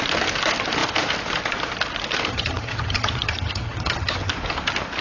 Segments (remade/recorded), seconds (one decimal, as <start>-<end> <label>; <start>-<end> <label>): 0.0-2.3 recorded; 2.3-4.3 remade; 4.3-5.0 recorded